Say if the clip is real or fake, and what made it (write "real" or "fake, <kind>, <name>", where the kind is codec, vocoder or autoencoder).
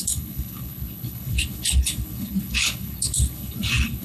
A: fake, codec, HILCodec